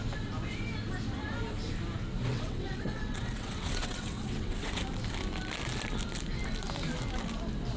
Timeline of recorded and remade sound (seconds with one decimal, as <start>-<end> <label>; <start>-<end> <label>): 0.0-2.3 recorded; 2.3-4.8 remade; 4.8-7.8 recorded